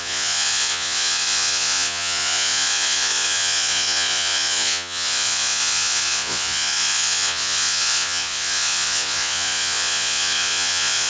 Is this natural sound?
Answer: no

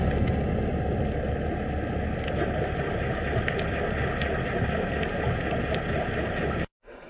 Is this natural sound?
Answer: yes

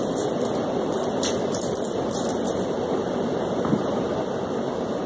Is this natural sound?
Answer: yes